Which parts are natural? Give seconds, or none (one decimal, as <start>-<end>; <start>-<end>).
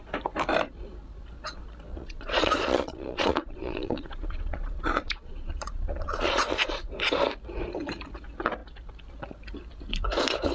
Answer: 0.0-1.9; 6.9-10.5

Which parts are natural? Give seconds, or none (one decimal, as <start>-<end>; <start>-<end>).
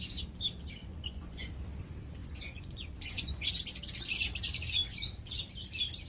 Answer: 0.0-0.8; 1.5-2.2; 3.5-6.1